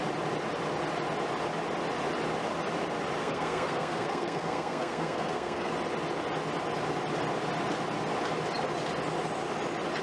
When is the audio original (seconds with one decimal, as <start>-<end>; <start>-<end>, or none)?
0.0-3.2; 5.7-10.0